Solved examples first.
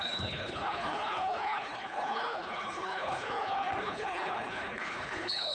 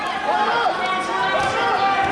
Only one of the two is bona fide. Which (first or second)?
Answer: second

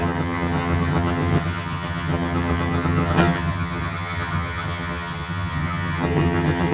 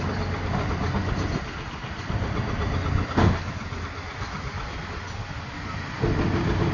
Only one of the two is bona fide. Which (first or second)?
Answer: second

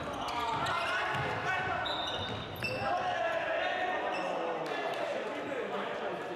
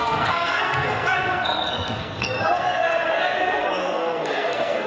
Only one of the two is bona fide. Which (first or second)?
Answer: first